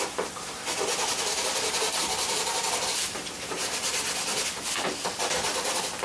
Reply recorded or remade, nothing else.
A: remade